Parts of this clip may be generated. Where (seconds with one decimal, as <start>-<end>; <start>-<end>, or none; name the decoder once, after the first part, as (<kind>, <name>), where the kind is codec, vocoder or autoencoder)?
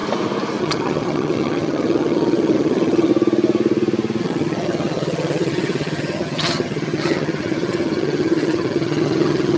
0.6-3.1 (vocoder, HiFi-GAN); 4.2-9.6